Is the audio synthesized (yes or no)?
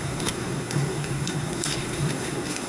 yes